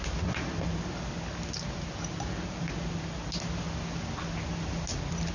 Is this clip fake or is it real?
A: real